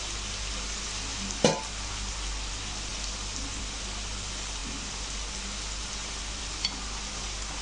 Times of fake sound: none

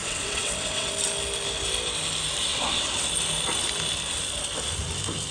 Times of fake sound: 0.0-0.9 (vocoder, WaveNeXt); 2.5-3.1

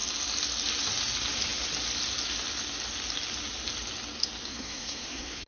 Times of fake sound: 4.5-5.5 (codec, SNAC)